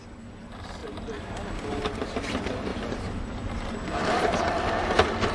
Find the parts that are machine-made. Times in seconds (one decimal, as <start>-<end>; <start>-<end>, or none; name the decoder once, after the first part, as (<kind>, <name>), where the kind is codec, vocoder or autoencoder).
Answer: none

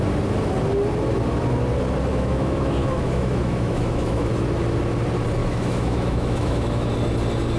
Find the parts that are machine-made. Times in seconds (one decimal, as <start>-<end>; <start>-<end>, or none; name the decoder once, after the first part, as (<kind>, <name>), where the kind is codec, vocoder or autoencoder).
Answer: 2.1-4.3 (autoencoder, DAC-VAE); 5.4-6.9

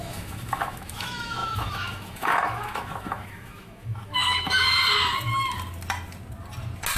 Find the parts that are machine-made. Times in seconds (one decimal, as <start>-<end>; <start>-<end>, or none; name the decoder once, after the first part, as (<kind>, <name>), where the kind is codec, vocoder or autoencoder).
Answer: 0.0-4.8 (autoencoder, DAC-VAE)

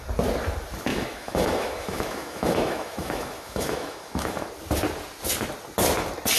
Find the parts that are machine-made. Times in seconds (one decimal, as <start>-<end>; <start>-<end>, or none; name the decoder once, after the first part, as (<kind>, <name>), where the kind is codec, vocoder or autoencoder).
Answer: 0.9-4.5 (autoencoder, DAC-VAE)

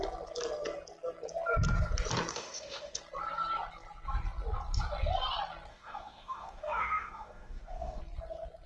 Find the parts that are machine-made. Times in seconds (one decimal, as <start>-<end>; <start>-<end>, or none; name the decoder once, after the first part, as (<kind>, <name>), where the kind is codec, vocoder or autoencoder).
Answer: 2.3-3.0 (autoencoder, DAC-VAE); 5.7-8.0

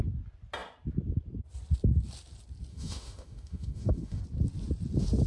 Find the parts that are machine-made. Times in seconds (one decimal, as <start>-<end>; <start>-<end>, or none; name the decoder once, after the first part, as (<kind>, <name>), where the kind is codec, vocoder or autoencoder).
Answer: 2.7-4.2 (autoencoder, DAC-VAE)

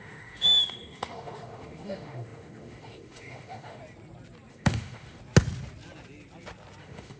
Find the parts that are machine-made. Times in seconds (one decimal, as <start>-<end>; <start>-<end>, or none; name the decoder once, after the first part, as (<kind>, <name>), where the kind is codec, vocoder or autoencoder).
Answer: 0.0-3.8 (autoencoder, DAC-VAE); 4.5-5.2; 6.8-7.2

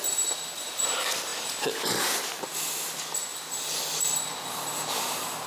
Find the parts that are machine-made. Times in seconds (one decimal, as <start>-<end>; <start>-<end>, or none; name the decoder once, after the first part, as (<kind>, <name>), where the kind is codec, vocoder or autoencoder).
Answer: none